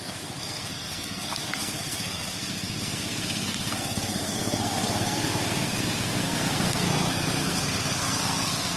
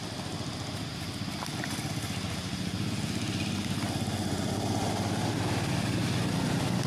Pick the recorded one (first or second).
second